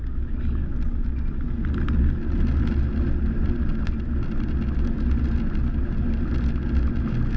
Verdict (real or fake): real